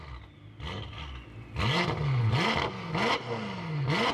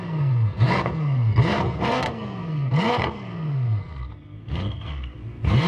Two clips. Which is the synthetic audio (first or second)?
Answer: second